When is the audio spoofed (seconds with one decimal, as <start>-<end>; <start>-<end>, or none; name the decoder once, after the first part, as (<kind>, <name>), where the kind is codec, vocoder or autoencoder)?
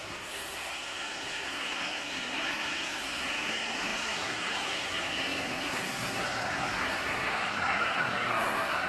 0.0-8.9 (codec, SNAC)